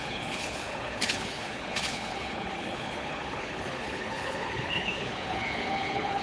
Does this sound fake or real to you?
fake